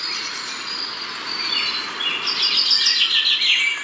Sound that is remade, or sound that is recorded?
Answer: recorded